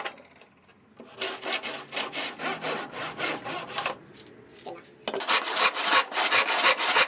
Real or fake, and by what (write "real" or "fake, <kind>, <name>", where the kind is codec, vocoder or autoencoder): real